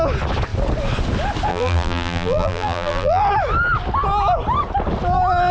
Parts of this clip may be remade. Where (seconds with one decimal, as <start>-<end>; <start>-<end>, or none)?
1.5-3.2